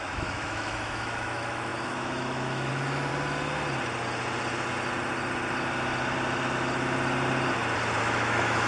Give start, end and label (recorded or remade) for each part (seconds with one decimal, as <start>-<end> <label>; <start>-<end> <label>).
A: 0.0-3.1 remade; 3.1-8.0 recorded; 8.0-8.7 remade